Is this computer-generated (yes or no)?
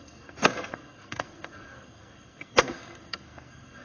yes